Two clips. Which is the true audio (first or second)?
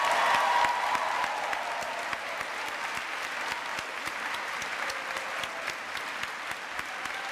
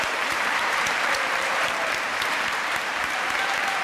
first